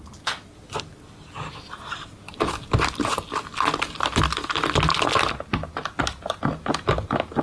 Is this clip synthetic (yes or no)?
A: no